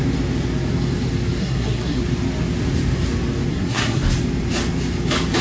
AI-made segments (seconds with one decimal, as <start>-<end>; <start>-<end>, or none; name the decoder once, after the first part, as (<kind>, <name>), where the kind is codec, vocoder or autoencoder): 1.4-2.0 (codec, SNAC); 3.5-4.0

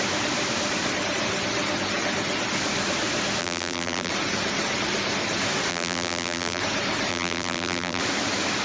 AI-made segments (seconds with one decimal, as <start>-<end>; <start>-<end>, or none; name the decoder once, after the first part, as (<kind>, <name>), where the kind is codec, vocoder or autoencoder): 3.4-4.1 (vocoder, BigVGAN v2); 5.7-6.6; 7.1-8.0